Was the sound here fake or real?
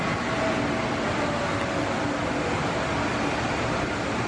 real